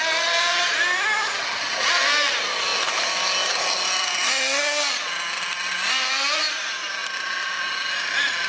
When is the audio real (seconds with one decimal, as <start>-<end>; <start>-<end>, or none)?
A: 0.0-8.5